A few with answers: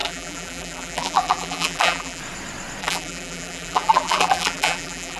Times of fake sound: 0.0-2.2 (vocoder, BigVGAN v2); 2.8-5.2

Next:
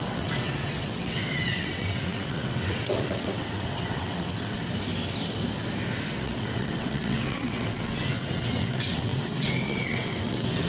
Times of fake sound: 0.0-4.6 (vocoder, WaveNeXt); 6.1-10.7

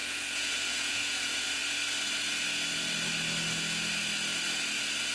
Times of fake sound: 0.0-1.6 (vocoder, Vocos)

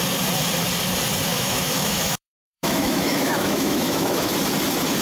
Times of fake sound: 1.3-4.3 (autoencoder, DAC-VAE)